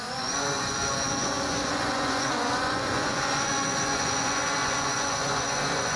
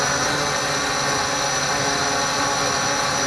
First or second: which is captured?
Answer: second